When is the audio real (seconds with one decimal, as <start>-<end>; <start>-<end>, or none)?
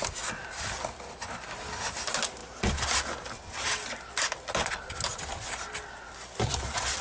0.0-7.0